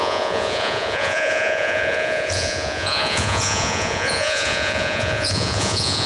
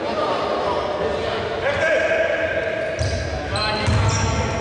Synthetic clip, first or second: first